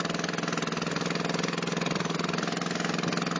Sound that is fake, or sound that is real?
real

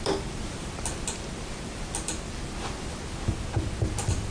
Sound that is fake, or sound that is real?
real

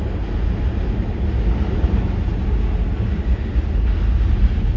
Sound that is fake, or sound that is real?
real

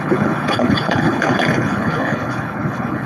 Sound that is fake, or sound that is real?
fake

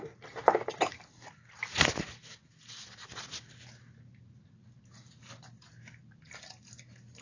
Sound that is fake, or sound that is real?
real